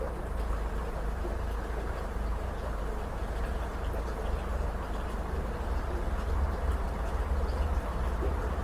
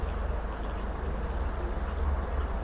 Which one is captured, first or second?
second